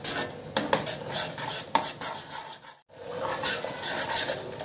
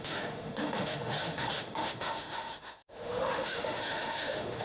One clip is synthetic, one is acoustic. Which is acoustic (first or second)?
first